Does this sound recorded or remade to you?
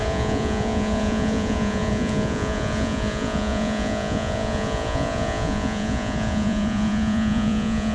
remade